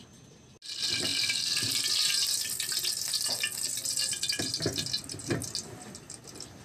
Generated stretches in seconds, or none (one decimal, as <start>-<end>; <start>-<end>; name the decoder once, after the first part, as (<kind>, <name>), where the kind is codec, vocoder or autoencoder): none